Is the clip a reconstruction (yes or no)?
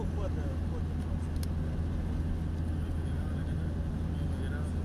no